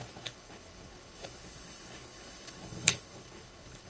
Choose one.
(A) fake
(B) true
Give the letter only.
A